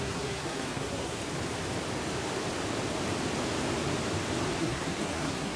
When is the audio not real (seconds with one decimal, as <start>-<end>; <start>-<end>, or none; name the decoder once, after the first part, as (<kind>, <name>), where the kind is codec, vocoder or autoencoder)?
0.0-1.2 (codec, SNAC); 4.6-5.6